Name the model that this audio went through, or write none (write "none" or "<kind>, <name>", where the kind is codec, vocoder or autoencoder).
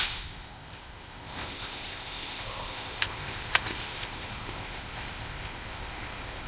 codec, ZipCodec